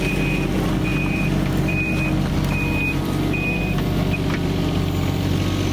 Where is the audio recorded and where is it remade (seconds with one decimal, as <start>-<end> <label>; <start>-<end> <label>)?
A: 0.0-5.7 remade